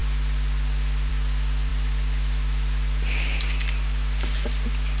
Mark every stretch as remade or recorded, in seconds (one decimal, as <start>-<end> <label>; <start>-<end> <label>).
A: 0.0-5.0 recorded